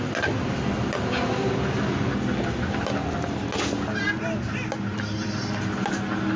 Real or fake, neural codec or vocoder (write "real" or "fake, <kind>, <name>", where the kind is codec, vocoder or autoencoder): real